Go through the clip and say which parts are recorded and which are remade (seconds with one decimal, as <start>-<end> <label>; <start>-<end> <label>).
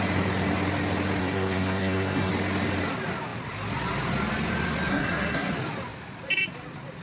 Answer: 0.0-1.2 recorded; 1.2-2.3 remade; 2.3-4.9 recorded; 4.9-5.5 remade; 5.5-7.0 recorded